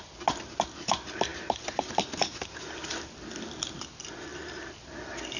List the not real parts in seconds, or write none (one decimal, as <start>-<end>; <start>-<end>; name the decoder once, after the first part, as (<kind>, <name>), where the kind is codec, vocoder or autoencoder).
none